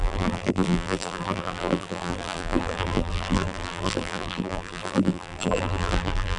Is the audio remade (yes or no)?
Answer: yes